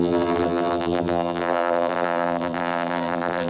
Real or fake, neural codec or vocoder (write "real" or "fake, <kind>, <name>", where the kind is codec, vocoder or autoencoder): fake, vocoder, BigVGAN v2